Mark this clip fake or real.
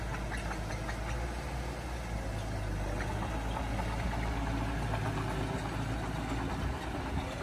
real